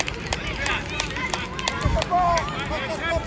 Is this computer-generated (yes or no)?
no